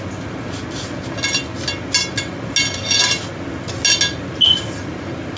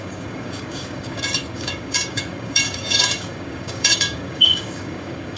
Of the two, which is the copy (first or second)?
second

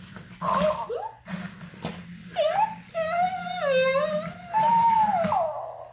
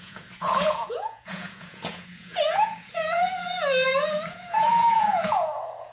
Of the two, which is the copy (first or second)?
second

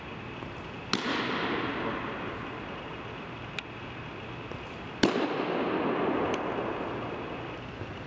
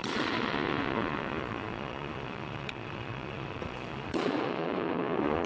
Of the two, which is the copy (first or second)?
second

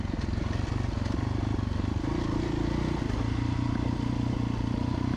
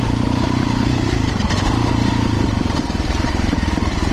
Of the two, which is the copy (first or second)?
second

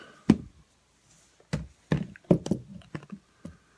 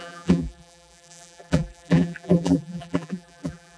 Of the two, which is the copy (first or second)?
second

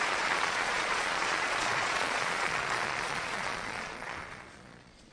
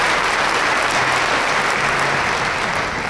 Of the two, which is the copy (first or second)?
first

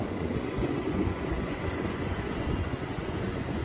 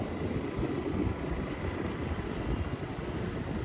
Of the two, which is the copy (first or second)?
first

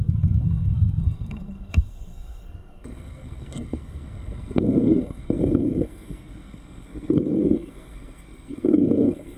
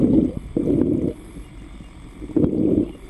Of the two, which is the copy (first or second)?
first